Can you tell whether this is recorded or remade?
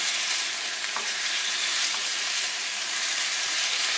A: remade